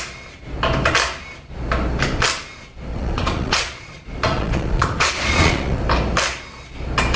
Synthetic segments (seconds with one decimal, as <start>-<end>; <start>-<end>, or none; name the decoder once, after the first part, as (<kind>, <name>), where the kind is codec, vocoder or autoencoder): 2.9-5.8 (vocoder, Vocos)